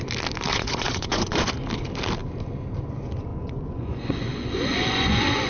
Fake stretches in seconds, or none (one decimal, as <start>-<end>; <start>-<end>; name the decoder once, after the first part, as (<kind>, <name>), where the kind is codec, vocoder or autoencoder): 0.5-1.5 (vocoder, Vocos); 3.3-5.5